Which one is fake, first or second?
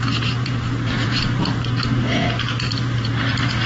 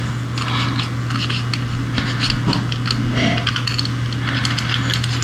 first